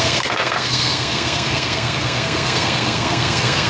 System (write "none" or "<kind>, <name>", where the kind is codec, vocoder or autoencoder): codec, SNAC